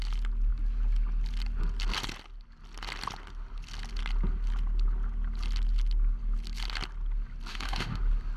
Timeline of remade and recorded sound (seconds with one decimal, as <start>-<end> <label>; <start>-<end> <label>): 0.0-7.5 recorded; 7.5-8.0 remade; 8.0-8.4 recorded